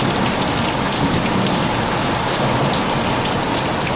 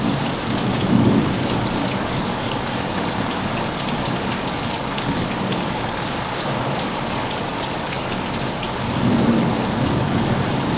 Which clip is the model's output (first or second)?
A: second